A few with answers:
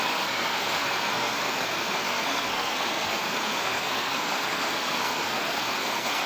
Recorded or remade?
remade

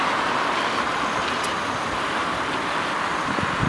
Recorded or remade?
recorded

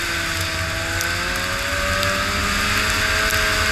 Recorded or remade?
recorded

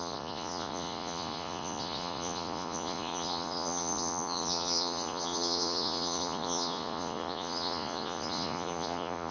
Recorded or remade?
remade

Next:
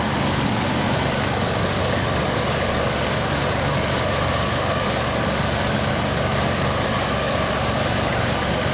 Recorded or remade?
remade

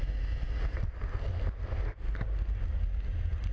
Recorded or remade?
recorded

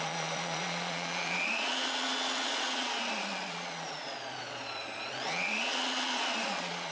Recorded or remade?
remade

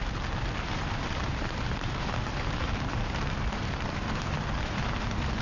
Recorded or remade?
remade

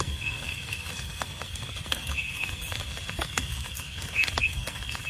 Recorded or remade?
remade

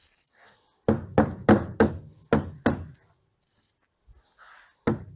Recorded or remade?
recorded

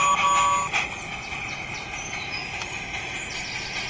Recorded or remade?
recorded